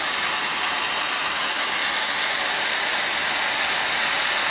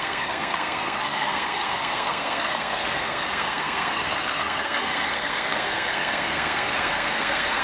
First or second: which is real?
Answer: first